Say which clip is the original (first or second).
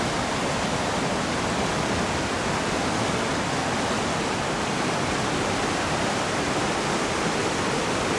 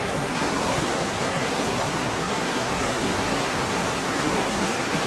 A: first